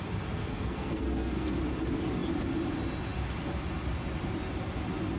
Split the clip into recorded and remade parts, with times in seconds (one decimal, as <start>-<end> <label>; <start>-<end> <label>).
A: 0.0-0.4 recorded; 0.4-1.6 remade; 1.6-5.2 recorded